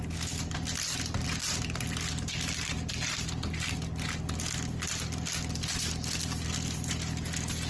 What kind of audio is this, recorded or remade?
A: recorded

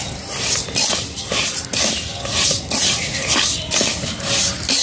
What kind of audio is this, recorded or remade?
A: recorded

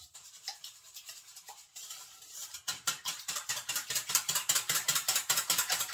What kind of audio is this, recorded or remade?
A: remade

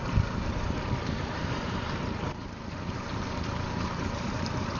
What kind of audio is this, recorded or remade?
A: remade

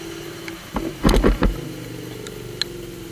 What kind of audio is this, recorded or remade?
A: recorded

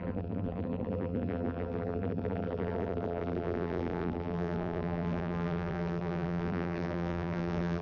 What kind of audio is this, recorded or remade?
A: remade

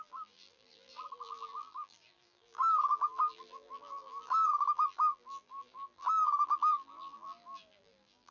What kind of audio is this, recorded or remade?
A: remade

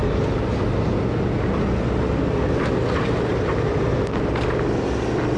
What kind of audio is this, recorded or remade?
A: recorded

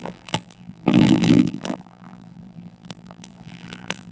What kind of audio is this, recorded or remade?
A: remade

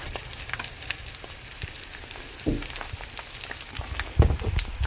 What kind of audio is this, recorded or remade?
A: recorded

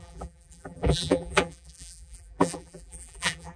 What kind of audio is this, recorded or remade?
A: remade